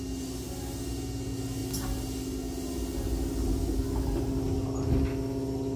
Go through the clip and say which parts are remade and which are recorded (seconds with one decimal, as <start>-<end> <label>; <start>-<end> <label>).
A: 0.0-5.8 recorded